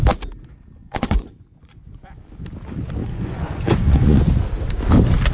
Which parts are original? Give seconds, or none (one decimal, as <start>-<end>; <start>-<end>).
0.0-0.8; 2.2-3.0; 4.2-5.3